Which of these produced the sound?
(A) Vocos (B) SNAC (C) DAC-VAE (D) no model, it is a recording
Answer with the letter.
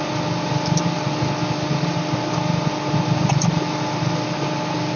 D